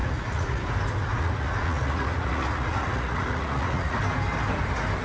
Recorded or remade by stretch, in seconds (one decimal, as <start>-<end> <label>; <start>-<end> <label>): 0.0-0.6 remade; 0.6-1.1 recorded; 1.1-4.0 remade; 4.0-5.0 recorded